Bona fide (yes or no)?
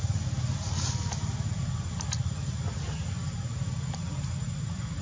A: yes